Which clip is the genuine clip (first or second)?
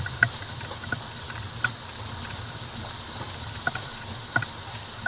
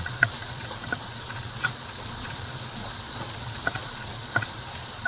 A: first